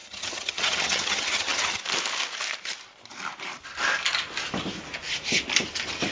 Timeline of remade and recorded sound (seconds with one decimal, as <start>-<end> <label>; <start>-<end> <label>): 0.0-1.8 remade; 1.8-6.1 recorded